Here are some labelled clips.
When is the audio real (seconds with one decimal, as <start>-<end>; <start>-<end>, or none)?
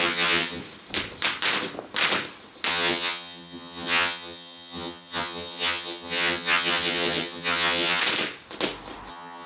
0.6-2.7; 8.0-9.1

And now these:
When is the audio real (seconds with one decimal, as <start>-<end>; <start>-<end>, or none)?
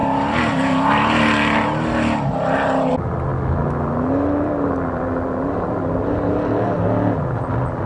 0.0-7.9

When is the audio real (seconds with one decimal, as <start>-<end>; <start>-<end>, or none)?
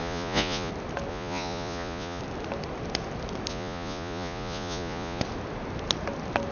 0.7-1.1; 2.2-3.5; 5.2-6.5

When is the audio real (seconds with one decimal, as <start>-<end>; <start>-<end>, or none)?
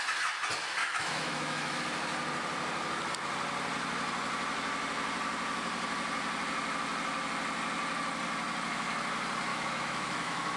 0.0-0.8; 1.8-9.5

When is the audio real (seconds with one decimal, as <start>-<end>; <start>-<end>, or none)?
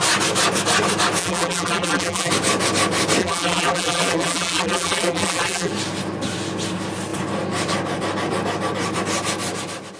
0.0-1.2; 2.3-3.2; 5.7-10.0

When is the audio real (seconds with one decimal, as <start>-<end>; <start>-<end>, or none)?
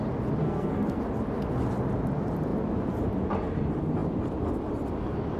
0.0-0.4; 1.0-5.4